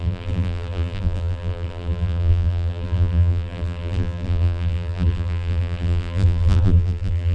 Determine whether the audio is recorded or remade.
remade